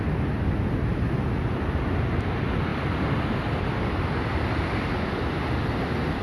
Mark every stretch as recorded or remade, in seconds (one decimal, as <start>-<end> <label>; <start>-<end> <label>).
0.0-6.2 recorded